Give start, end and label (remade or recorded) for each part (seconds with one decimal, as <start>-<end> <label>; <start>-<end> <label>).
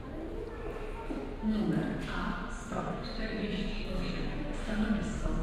0.0-2.7 recorded; 2.7-5.4 remade